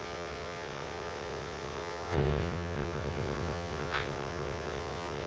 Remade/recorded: remade